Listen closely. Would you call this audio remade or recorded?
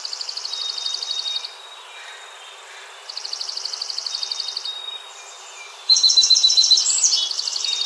remade